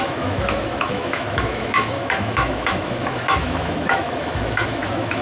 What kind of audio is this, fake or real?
fake